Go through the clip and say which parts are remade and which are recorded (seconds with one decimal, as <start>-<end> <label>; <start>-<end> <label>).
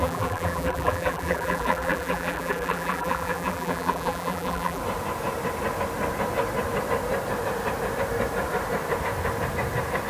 0.0-4.8 remade; 4.8-10.1 recorded